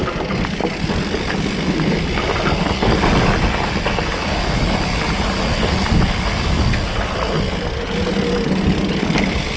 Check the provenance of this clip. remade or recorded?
recorded